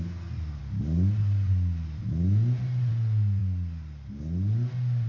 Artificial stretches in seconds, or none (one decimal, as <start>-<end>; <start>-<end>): none